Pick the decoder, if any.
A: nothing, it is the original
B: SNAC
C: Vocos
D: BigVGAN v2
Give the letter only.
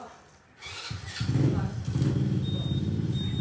A